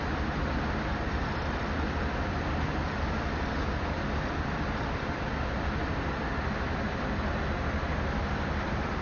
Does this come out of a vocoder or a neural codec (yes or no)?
yes